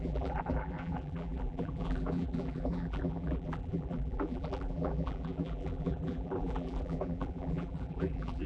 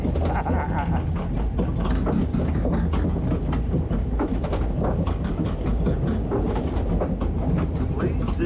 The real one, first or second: second